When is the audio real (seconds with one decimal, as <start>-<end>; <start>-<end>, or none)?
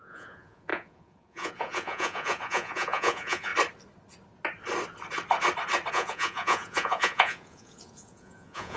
3.5-5.9